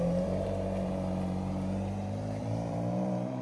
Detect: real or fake fake